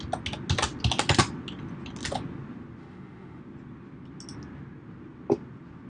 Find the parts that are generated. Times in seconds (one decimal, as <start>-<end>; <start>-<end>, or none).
2.8-3.4